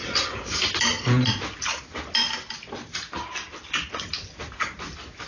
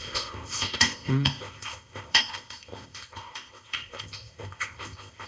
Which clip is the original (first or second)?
first